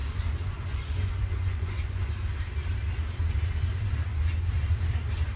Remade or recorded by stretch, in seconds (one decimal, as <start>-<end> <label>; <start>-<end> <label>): 0.0-2.1 remade; 2.1-5.4 recorded